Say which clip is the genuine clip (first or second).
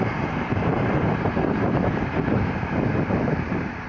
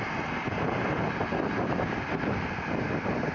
second